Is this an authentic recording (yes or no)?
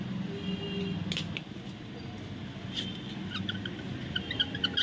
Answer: yes